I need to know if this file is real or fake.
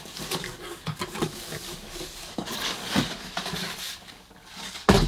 fake